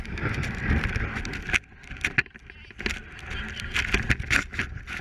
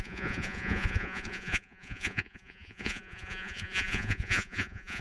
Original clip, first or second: first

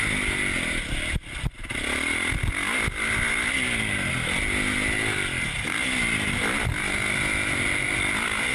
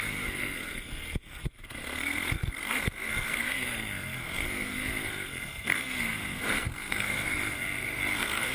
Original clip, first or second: first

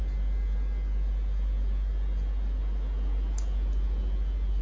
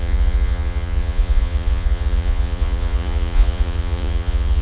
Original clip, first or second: first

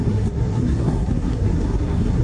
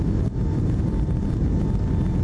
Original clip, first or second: second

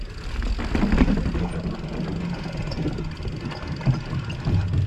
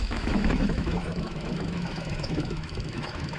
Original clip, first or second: first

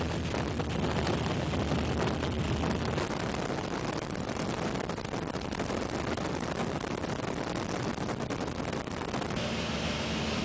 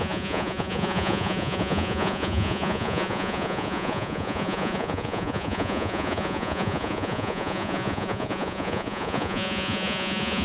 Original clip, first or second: first